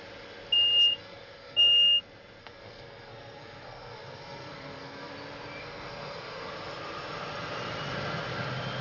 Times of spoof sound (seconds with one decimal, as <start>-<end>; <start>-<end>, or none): 1.0-2.0; 2.4-5.1; 5.6-6.5